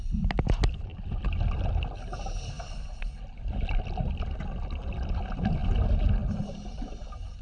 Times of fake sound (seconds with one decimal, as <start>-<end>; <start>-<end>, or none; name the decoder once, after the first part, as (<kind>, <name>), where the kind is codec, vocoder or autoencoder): none